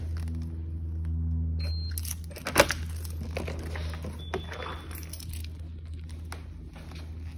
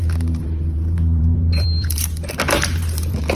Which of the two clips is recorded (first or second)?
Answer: first